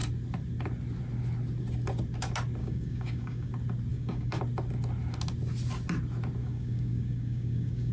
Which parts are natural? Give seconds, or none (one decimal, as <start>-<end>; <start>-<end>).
0.0-2.6; 3.5-3.9; 4.4-6.4